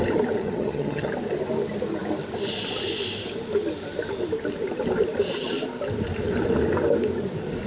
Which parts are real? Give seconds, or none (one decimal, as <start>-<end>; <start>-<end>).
0.0-0.4; 1.1-7.7